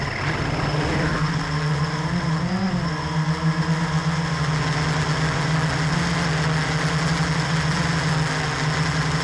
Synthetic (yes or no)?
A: no